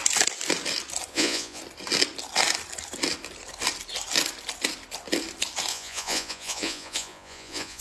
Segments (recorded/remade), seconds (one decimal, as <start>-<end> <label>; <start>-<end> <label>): 0.0-1.1 recorded; 1.1-1.6 remade; 1.6-5.7 recorded; 5.7-7.8 remade

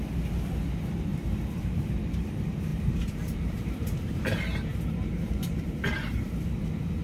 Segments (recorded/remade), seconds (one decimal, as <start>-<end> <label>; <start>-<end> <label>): 0.0-1.1 recorded; 1.1-1.9 remade; 1.9-2.7 recorded; 2.7-6.6 remade; 6.6-7.0 recorded

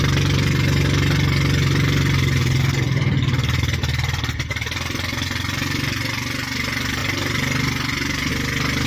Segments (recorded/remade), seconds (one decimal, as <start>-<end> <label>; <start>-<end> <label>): 0.0-2.4 recorded; 2.4-3.6 remade; 3.6-8.9 recorded

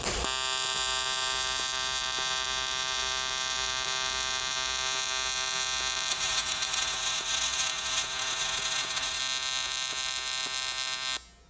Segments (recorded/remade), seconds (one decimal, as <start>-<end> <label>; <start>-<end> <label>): 0.0-6.1 recorded; 6.1-9.2 remade; 9.2-11.5 recorded